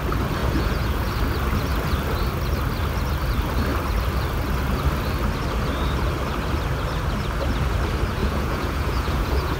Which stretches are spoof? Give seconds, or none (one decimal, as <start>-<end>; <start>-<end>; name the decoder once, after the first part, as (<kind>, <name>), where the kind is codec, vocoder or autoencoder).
0.4-1.1 (vocoder, Vocos); 8.2-9.6